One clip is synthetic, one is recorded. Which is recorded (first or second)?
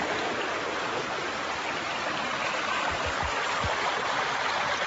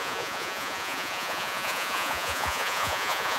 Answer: first